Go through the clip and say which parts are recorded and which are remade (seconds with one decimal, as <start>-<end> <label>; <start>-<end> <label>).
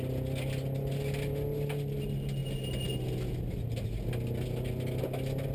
0.0-5.5 recorded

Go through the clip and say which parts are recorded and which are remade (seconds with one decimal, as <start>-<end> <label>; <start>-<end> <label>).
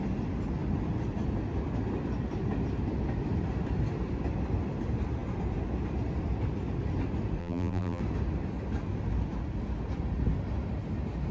0.0-7.4 recorded; 7.4-8.0 remade; 8.0-11.3 recorded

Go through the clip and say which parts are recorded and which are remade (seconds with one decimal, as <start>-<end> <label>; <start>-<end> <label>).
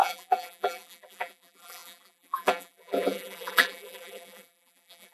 0.0-5.1 remade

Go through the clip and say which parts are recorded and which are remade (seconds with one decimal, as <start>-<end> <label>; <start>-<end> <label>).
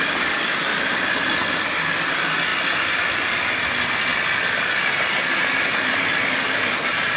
0.0-7.2 remade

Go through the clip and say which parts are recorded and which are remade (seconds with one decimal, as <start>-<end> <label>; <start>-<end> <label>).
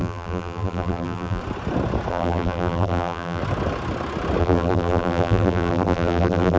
0.0-1.4 remade; 1.4-2.1 recorded; 2.1-3.4 remade; 3.4-4.4 recorded; 4.4-6.6 remade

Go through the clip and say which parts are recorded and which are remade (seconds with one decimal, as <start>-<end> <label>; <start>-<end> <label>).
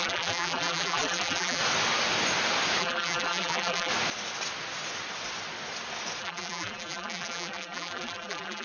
0.0-1.6 remade; 1.6-2.8 recorded; 2.8-3.9 remade; 3.9-6.2 recorded; 6.2-8.6 remade